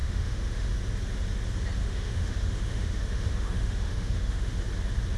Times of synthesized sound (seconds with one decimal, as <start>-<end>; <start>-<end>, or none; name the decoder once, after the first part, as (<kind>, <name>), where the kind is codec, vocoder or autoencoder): 0.0-0.7 (autoencoder, DAC-VAE); 1.8-4.6